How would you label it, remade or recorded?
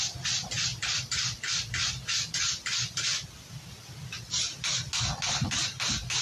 recorded